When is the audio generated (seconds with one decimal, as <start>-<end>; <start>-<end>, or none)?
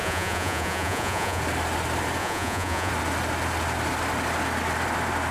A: 0.0-1.4; 2.2-2.9